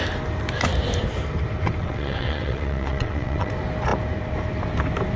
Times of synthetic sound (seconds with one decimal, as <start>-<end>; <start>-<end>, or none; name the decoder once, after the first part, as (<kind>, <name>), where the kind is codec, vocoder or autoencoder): 1.8-3.5 (vocoder, WaveNeXt)